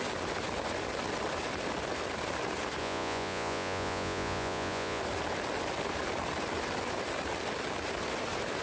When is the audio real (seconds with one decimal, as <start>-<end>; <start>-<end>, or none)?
0.0-2.8; 5.0-8.6